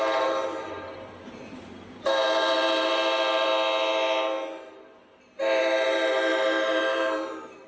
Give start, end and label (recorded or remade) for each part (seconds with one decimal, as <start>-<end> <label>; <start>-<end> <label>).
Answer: 0.0-3.5 remade; 3.5-5.6 recorded; 5.6-7.7 remade